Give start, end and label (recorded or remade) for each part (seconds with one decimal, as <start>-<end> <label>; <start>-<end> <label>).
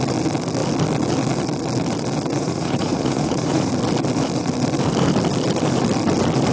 0.0-2.4 recorded; 2.4-3.7 remade; 3.7-6.5 recorded